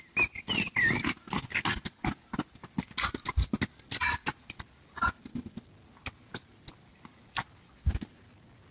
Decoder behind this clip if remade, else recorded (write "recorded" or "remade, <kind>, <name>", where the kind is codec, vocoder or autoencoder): recorded